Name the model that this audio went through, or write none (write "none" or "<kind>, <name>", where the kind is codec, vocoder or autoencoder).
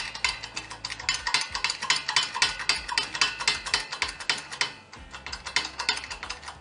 none